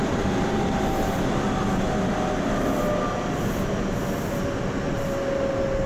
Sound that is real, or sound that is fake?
real